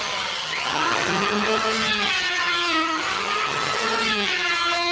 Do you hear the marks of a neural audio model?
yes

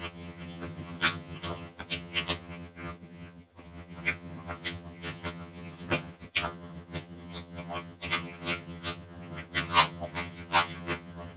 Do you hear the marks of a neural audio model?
yes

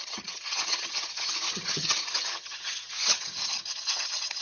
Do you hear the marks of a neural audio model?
yes